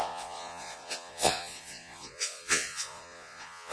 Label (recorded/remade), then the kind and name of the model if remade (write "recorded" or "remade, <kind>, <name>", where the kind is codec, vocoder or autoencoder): remade, vocoder, Vocos